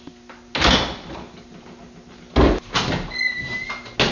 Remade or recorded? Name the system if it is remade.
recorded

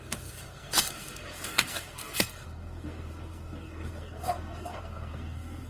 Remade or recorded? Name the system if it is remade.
remade, codec, SNAC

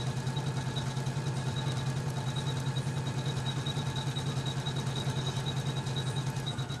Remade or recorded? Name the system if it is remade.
recorded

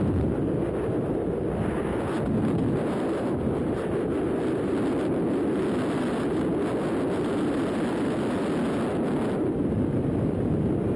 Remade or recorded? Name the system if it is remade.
recorded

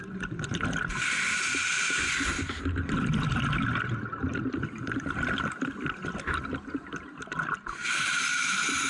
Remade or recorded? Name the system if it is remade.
recorded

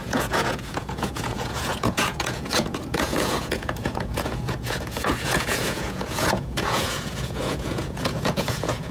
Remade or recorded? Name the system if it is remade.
remade, vocoder, Vocos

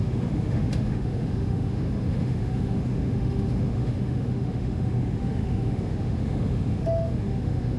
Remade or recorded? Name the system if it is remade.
remade, autoencoder, DAC-VAE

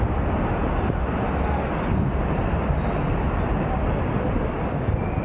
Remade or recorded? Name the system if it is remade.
recorded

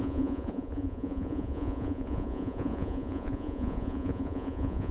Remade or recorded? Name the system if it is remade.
remade, vocoder, Vocos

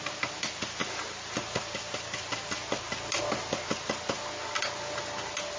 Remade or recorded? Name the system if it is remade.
recorded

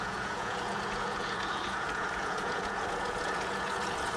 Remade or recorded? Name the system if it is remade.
remade, vocoder, Vocos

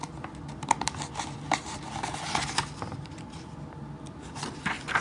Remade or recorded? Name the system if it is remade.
remade, vocoder, BigVGAN v2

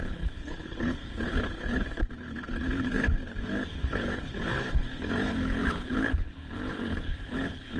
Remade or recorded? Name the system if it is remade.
remade, codec, HILCodec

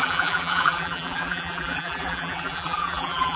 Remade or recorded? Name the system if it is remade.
remade, vocoder, BigVGAN v2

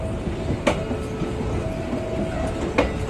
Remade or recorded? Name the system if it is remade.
recorded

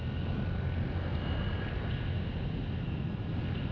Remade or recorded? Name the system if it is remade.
recorded